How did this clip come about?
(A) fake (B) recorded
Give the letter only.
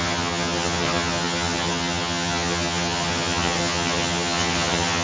A